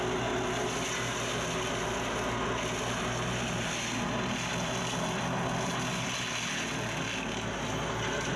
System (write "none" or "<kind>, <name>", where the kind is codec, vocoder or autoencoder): none